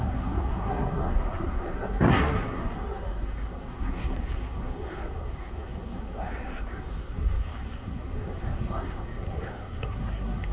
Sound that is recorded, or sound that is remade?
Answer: remade